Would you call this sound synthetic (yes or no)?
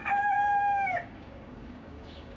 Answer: yes